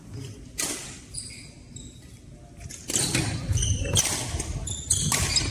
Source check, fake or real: real